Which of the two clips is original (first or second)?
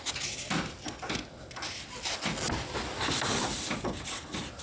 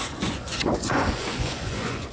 first